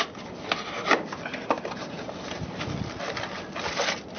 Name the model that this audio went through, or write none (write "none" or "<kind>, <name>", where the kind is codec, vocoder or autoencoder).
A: none